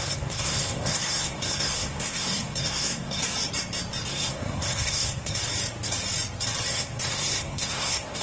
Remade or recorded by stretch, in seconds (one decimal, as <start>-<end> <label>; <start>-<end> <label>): 0.0-3.2 remade; 3.2-4.1 recorded; 4.1-5.4 remade; 5.4-6.7 recorded; 6.7-8.2 remade